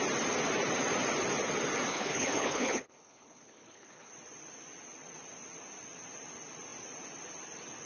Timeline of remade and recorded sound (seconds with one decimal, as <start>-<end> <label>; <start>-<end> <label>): 0.0-1.9 recorded; 1.9-4.1 remade; 4.1-7.9 recorded